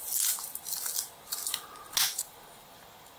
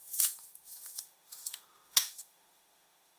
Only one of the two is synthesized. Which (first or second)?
second